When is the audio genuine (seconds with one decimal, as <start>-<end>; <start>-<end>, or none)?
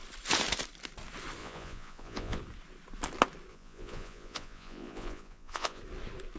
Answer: 0.0-1.4; 2.4-3.5; 5.8-6.4